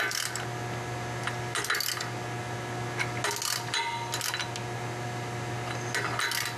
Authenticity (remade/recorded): recorded